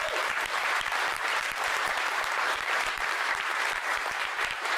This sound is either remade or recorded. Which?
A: remade